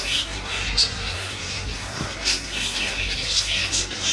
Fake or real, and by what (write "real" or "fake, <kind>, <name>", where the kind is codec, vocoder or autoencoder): fake, codec, SNAC